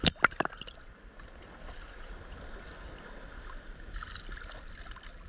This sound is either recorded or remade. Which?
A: recorded